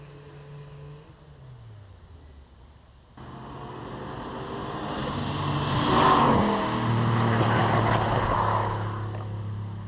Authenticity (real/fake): real